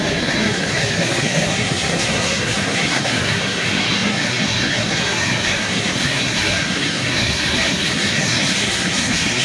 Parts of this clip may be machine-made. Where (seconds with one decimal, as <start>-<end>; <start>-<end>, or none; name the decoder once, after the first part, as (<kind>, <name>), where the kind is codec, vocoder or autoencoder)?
0.0-9.4 (codec, SNAC)